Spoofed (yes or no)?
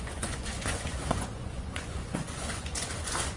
yes